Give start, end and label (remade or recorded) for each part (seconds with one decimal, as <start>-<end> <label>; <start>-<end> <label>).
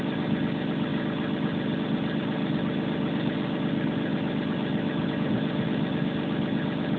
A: 0.0-7.0 recorded